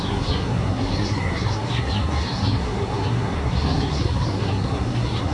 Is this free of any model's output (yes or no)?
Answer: no